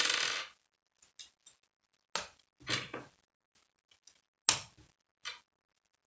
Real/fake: real